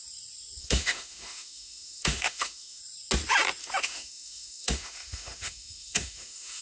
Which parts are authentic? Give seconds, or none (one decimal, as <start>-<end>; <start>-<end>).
0.0-0.6; 2.8-3.6